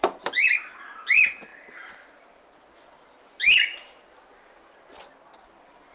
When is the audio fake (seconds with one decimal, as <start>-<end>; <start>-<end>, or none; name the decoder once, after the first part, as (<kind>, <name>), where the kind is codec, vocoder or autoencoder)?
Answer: none